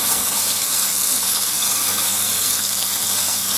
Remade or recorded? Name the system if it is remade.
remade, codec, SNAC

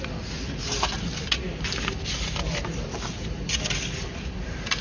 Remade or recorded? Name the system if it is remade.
recorded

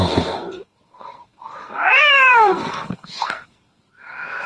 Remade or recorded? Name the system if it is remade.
remade, codec, SNAC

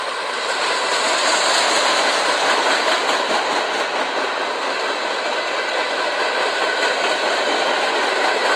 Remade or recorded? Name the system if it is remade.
recorded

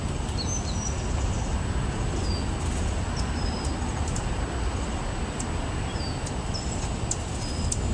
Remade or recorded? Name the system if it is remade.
recorded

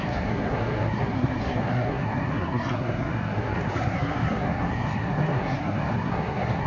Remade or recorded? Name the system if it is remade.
remade, codec, SNAC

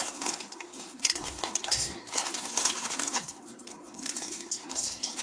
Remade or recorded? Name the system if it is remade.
remade, codec, SNAC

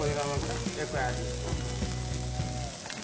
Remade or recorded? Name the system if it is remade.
recorded